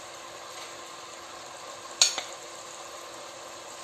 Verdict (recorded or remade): recorded